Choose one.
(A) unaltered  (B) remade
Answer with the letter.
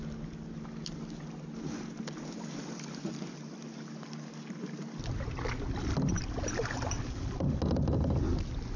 A